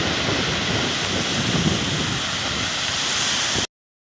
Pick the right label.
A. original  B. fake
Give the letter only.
A